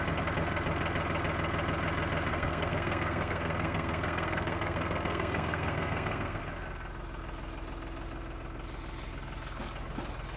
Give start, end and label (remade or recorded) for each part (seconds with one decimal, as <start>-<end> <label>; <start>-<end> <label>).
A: 0.0-2.3 recorded; 2.3-6.4 remade; 6.4-10.4 recorded